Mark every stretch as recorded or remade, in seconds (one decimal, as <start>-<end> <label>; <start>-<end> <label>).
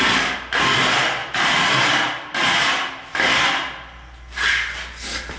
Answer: 0.0-5.4 recorded